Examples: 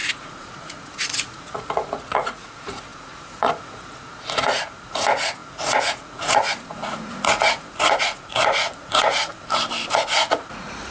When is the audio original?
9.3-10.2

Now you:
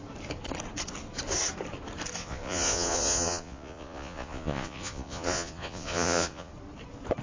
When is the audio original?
0.0-2.2; 6.5-7.2

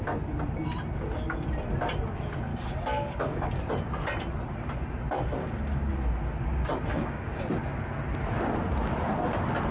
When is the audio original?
0.0-2.5; 3.6-5.4; 5.9-6.9; 7.4-9.7

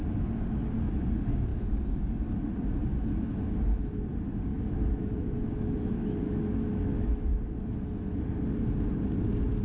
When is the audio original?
0.0-1.5; 2.1-2.9; 3.8-4.5; 8.0-9.6